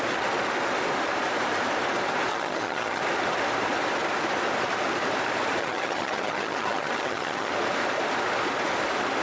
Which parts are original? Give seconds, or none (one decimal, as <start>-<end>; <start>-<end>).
0.0-2.3; 3.0-5.6; 7.5-9.2